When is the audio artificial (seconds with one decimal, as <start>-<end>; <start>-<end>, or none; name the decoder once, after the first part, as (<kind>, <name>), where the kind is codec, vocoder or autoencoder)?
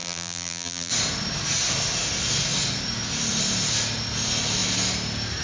0.0-0.9 (vocoder, BigVGAN v2)